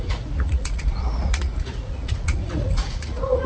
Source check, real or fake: fake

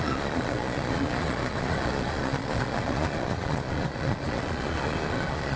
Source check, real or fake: fake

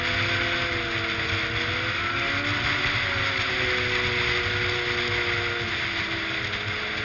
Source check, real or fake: real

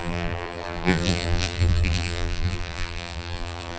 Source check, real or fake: fake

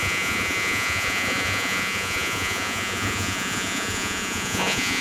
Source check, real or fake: fake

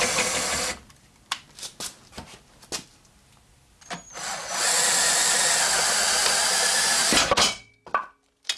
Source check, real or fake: real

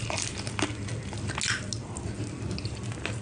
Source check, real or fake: real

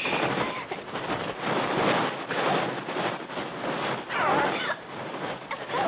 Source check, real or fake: real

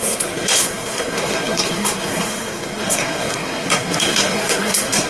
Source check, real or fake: fake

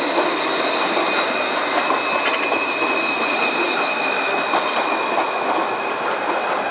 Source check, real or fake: real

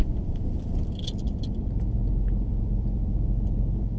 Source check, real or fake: fake